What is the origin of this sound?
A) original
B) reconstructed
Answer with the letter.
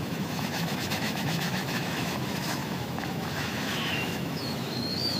B